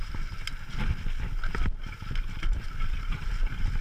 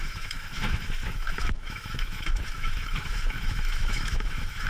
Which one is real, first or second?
first